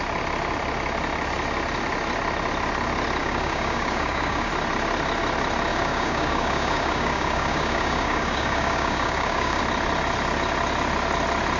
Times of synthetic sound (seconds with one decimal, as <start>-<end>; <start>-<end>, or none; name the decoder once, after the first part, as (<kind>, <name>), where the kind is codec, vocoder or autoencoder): 3.2-4.5 (codec, DAC); 5.7-9.6